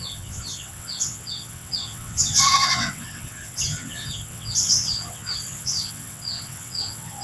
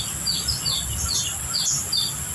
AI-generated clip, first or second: first